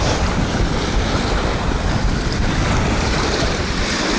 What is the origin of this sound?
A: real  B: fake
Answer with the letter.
A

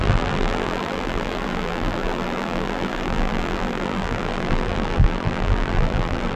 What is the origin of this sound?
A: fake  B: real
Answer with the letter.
A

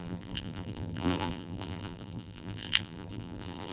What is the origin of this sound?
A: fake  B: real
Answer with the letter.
A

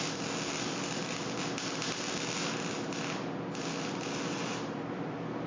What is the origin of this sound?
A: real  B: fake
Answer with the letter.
A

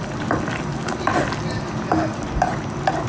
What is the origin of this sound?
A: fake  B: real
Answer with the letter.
B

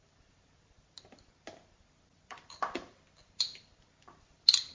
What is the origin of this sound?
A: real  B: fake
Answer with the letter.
A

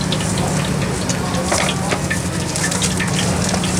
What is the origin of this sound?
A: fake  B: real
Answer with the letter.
B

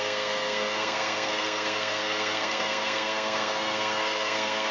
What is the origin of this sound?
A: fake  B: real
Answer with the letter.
A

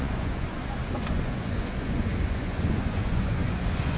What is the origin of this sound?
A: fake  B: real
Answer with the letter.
A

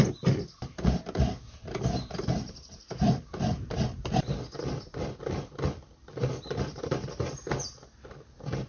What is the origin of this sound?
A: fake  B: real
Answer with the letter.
B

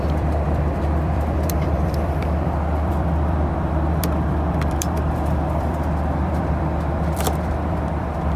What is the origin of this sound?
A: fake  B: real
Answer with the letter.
A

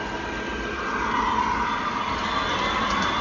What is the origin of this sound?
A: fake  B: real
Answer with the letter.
B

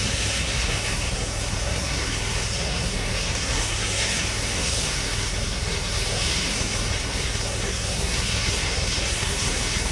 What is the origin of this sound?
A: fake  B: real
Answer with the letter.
A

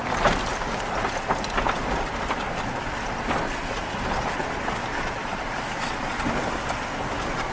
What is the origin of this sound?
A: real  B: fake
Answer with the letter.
A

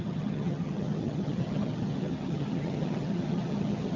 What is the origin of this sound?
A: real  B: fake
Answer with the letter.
B